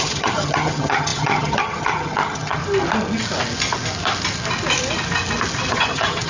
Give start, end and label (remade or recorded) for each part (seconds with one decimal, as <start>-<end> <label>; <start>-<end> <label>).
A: 0.0-2.6 remade; 2.6-5.7 recorded; 5.7-6.3 remade